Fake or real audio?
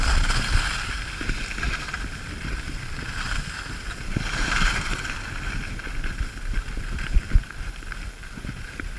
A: real